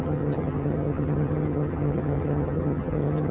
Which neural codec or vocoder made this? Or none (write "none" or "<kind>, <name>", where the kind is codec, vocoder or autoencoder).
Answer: vocoder, HiFi-GAN